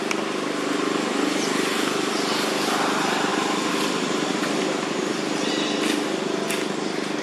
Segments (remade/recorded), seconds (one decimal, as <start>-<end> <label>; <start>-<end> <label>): 0.0-7.2 recorded